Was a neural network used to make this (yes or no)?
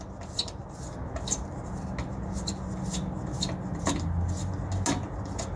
no